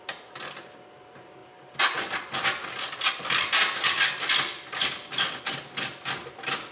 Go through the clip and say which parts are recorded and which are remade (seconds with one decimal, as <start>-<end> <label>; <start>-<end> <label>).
0.0-6.7 recorded